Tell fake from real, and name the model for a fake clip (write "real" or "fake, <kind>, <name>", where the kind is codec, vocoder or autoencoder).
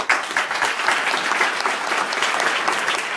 fake, vocoder, BigVGAN v2